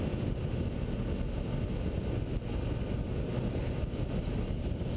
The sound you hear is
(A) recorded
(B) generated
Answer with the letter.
A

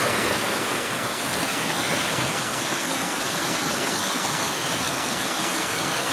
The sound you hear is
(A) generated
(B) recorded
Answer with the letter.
A